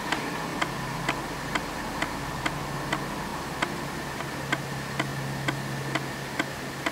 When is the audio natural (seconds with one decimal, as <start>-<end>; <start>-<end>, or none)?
0.0-6.9